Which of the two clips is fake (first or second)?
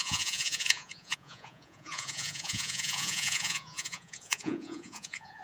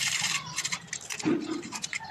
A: first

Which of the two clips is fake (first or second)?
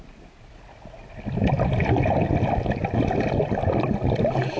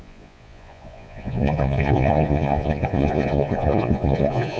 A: second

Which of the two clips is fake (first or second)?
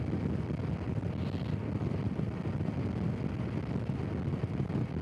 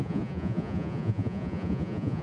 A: second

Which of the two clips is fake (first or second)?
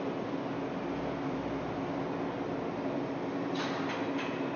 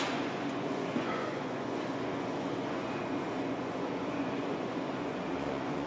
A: second